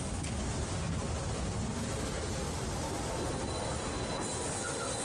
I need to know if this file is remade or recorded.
recorded